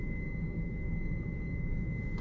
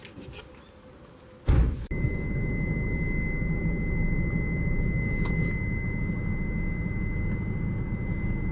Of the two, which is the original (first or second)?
second